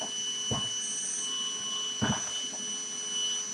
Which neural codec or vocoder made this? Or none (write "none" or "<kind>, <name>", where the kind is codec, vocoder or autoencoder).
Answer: none